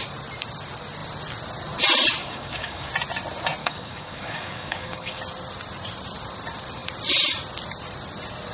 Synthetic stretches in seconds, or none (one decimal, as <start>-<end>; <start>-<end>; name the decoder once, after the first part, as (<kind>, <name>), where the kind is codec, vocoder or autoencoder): 2.2-2.9 (codec, DAC); 3.6-5.2